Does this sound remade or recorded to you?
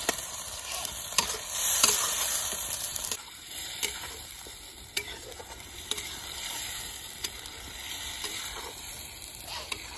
remade